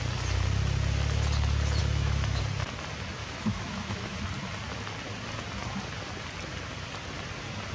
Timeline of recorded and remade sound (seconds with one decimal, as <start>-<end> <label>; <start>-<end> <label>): 0.0-1.8 recorded; 1.8-2.4 remade; 2.4-3.2 recorded; 3.2-4.2 remade; 4.2-7.7 recorded